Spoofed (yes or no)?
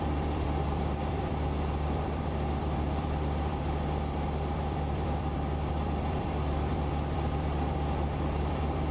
yes